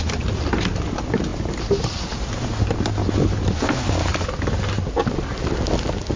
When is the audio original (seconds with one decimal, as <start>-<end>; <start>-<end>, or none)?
0.0-6.2